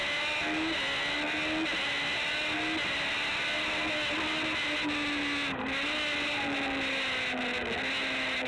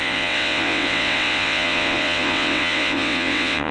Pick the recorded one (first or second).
first